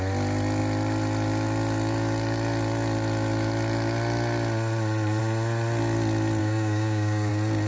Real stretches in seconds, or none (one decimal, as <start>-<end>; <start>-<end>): 0.0-6.4; 7.3-7.7